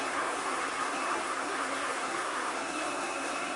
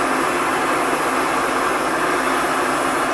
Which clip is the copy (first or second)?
first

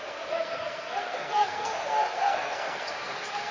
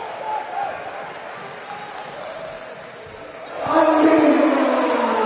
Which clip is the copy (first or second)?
first